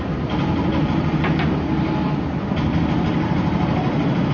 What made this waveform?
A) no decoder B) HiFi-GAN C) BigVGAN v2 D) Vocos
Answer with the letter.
A